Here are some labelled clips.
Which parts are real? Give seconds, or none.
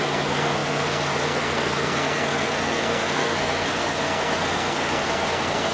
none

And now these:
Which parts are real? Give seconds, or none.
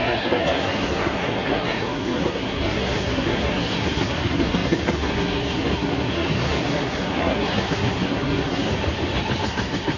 8.7-9.4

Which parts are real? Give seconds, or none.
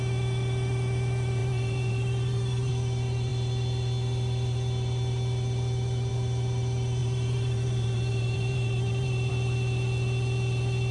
0.0-1.4; 2.7-7.0; 9.3-10.9